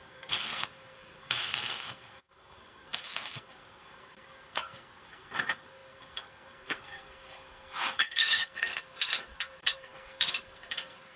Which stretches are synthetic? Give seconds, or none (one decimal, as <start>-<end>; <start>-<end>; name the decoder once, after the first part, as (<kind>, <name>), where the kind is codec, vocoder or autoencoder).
0.0-11.2 (codec, SNAC)